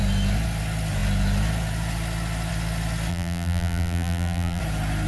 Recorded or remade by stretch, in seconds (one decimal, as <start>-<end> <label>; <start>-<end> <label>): 0.0-3.1 recorded; 3.1-4.6 remade; 4.6-5.1 recorded